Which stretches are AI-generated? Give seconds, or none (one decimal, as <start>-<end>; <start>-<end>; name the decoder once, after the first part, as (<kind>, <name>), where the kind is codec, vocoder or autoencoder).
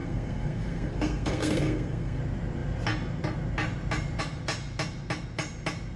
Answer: 0.0-2.2 (codec, SNAC)